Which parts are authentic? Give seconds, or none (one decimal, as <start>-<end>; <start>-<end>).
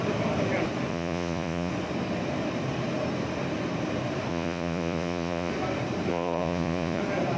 0.0-0.9; 1.7-4.3; 5.5-6.1; 7.0-7.4